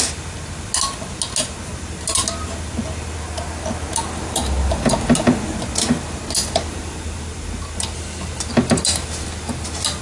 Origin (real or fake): real